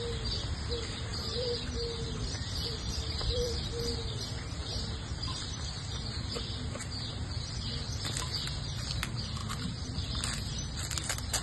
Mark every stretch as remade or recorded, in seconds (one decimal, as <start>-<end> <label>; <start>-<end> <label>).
0.0-1.1 recorded; 1.1-4.0 remade; 4.0-4.6 recorded; 4.6-7.1 remade; 7.1-9.4 recorded; 9.4-10.8 remade; 10.8-11.4 recorded